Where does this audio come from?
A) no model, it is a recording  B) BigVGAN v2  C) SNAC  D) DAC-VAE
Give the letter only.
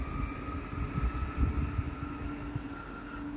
A